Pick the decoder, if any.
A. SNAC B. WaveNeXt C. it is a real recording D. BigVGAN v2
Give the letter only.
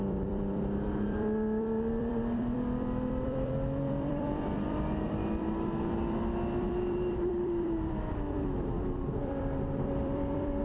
D